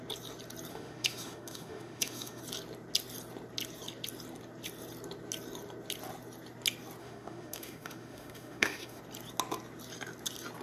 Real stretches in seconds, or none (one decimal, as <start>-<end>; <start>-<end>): 0.0-0.7; 2.4-7.0; 9.0-10.6